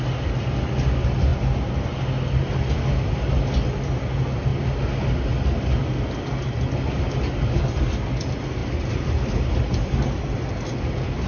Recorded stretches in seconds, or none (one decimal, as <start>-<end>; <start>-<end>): 0.0-11.3